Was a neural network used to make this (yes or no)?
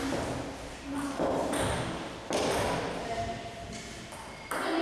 no